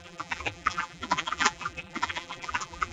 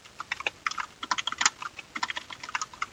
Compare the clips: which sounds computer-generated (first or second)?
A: first